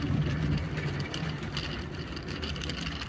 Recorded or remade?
recorded